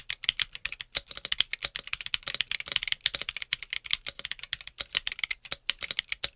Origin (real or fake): real